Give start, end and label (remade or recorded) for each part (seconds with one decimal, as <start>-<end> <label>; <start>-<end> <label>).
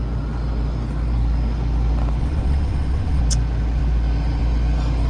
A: 0.0-2.2 recorded; 2.2-3.2 remade; 3.2-5.1 recorded